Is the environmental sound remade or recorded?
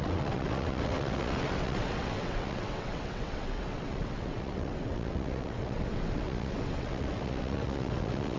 remade